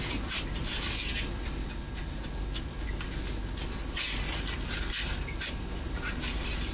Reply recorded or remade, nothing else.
recorded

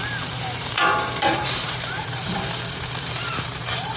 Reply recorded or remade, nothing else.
remade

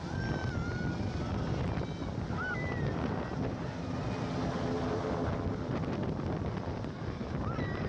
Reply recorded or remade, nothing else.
recorded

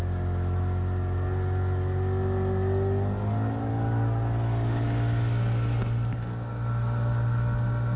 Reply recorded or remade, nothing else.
recorded